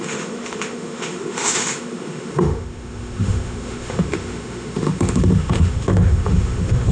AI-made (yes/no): yes